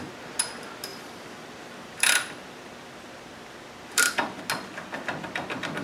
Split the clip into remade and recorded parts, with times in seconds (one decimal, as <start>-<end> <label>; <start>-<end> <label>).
0.0-0.9 recorded; 0.9-4.4 remade; 4.4-5.8 recorded